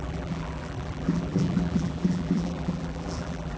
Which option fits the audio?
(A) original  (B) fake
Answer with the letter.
B